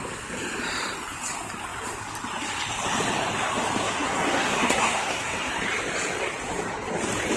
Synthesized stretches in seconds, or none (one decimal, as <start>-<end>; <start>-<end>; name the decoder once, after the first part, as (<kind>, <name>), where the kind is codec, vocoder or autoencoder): 3.8-5.5 (codec, SNAC)